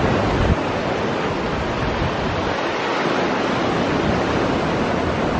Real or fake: real